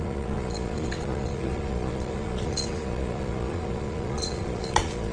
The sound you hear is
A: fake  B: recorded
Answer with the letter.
A